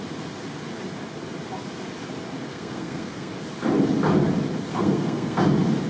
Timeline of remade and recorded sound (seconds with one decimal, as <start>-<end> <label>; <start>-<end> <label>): 0.0-2.5 recorded; 2.5-3.3 remade; 3.3-4.7 recorded; 4.7-5.4 remade; 5.4-5.9 recorded